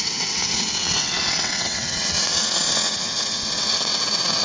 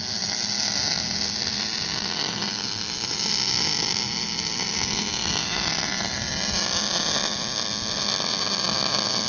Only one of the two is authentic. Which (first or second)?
second